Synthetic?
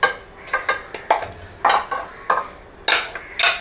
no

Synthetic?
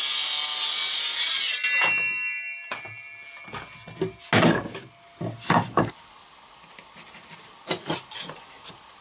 no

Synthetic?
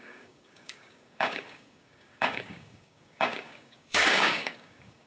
yes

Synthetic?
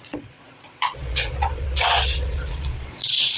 yes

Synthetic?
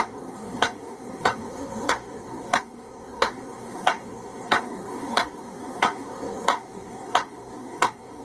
yes